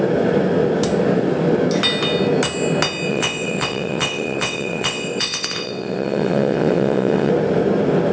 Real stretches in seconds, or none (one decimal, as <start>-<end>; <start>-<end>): 0.0-3.1; 7.3-8.1